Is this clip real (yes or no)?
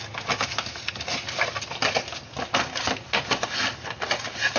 yes